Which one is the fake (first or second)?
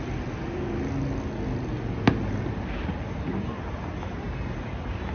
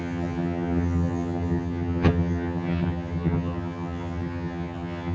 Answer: second